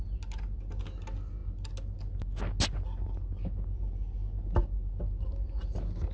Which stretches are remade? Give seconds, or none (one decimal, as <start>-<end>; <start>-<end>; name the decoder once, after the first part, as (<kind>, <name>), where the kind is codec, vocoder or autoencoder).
none